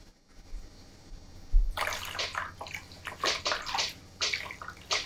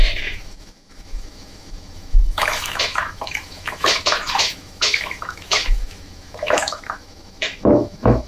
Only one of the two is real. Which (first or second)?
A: first